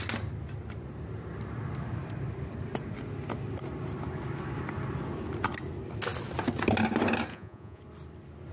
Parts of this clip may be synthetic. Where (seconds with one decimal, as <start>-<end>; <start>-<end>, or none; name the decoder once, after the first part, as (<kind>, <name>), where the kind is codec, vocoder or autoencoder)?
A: 7.3-7.8 (vocoder, Vocos)